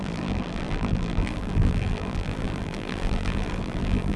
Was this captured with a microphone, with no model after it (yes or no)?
no